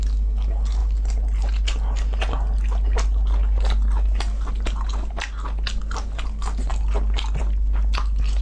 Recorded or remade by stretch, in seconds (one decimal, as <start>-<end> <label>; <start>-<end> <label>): 0.0-8.4 recorded